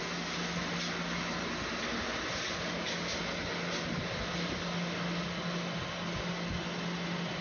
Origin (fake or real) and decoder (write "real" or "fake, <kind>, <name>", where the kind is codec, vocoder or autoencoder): real